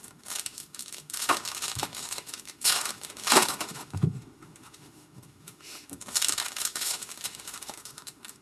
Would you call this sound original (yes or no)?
no